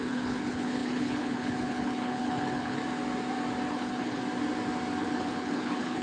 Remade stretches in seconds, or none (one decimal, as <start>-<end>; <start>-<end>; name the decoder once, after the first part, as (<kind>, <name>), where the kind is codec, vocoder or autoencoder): 0.0-2.8 (codec, HILCodec); 3.7-4.2; 5.0-6.0